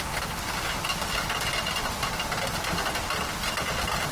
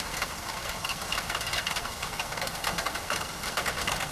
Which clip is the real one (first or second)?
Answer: first